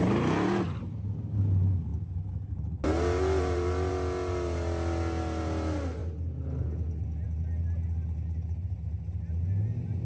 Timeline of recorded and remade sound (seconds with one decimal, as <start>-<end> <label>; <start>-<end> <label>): 0.0-10.1 recorded